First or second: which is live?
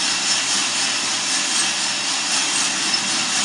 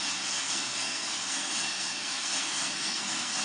first